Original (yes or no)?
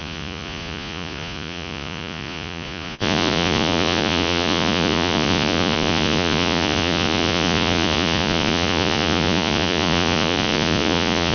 no